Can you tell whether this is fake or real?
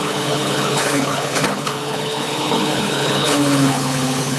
fake